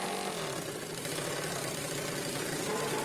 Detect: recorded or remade recorded